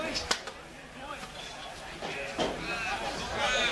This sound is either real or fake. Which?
real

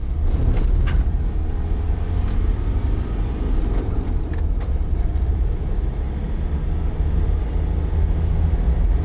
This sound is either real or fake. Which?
real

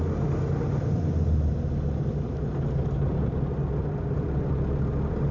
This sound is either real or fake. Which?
real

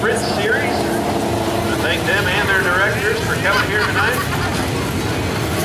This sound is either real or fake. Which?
real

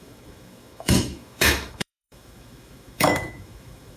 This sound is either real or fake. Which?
fake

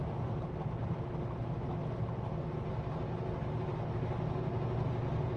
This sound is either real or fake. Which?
real